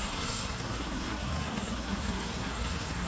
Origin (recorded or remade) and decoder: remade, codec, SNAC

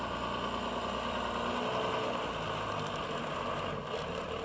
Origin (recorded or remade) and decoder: recorded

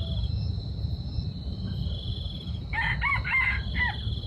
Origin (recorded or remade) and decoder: recorded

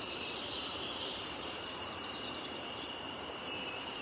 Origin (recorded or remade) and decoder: remade, vocoder, BigVGAN v2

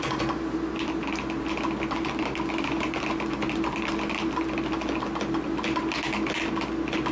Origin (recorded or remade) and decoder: recorded